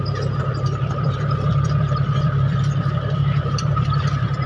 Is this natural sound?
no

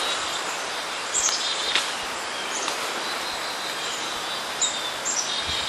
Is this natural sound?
yes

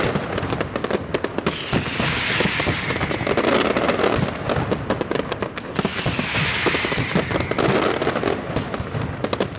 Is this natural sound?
yes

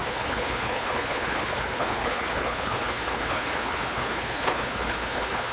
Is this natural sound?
no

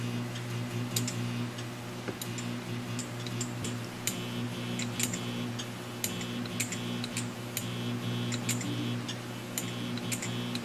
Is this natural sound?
yes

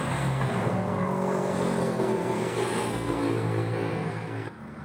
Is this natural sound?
no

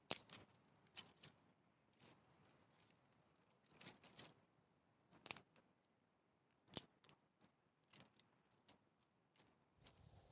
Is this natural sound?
yes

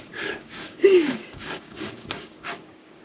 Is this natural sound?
no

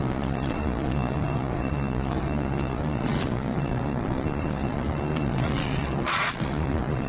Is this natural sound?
no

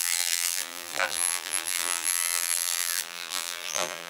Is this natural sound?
no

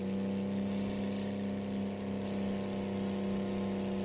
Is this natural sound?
yes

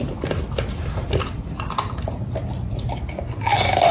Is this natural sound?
yes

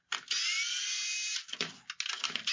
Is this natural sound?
yes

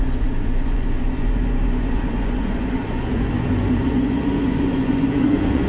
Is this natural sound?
no